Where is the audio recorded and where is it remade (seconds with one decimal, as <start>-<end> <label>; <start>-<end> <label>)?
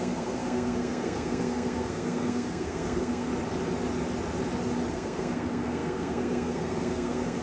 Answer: 0.0-3.3 remade; 3.3-4.9 recorded; 4.9-7.4 remade